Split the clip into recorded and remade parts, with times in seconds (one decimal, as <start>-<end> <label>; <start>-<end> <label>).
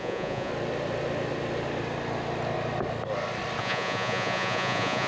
0.0-0.5 remade; 0.5-3.6 recorded; 3.6-5.1 remade